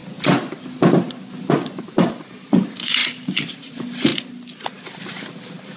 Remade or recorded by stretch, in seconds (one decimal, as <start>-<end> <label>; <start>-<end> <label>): 0.0-2.0 recorded; 2.0-4.1 remade; 4.1-5.0 recorded; 5.0-5.8 remade